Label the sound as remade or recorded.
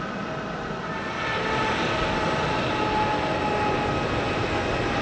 recorded